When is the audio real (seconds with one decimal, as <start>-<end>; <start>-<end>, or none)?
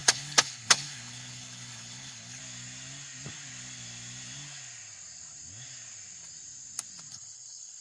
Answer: 2.4-7.1